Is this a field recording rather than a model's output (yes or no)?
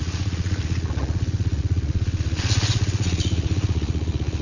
no